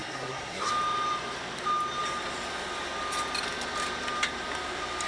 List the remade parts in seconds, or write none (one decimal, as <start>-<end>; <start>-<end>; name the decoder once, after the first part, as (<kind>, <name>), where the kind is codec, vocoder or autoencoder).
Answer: 0.0-0.7 (codec, SNAC)